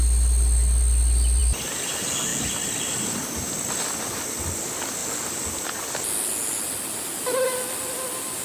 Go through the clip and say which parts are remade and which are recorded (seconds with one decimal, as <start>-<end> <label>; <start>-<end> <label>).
0.0-8.4 recorded